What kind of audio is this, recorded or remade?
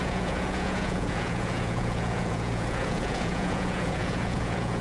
remade